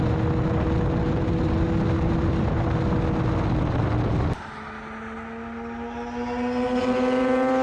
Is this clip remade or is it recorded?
recorded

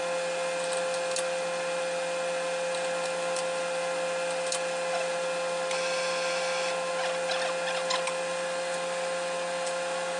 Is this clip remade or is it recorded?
recorded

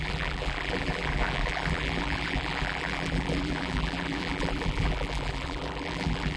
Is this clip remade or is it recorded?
remade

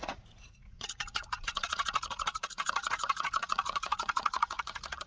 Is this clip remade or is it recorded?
remade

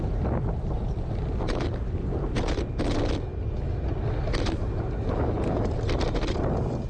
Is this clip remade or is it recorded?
recorded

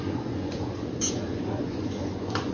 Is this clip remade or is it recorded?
remade